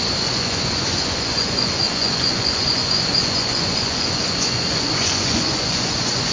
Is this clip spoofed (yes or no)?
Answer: yes